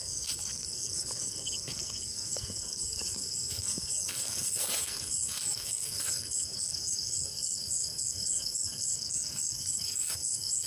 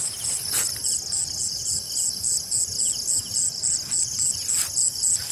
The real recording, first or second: second